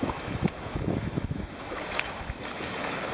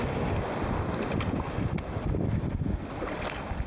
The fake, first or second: first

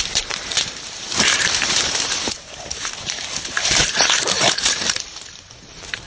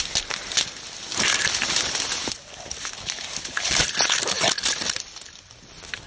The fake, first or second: first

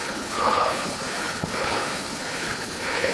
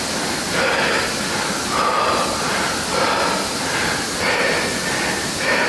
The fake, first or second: first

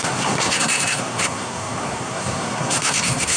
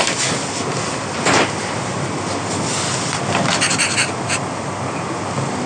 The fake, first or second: first